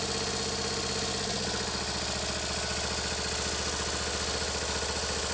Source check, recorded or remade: recorded